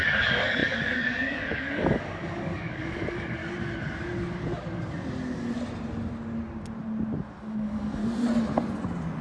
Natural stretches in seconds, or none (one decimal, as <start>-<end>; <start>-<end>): 3.4-7.5; 8.0-9.2